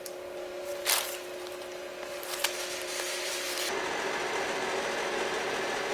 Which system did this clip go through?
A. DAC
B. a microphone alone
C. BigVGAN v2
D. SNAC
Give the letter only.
B